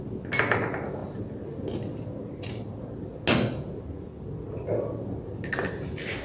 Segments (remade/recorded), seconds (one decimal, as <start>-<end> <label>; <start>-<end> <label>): 0.0-6.2 recorded